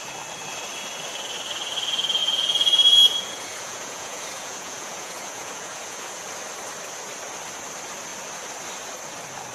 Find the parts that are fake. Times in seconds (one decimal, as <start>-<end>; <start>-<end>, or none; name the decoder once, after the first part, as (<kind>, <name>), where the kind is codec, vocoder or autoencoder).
2.2-6.2 (vocoder, Vocos)